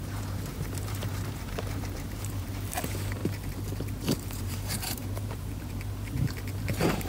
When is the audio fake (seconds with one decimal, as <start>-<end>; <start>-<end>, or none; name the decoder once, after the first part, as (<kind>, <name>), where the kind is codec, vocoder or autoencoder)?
0.0-3.2 (vocoder, BigVGAN v2); 4.4-7.1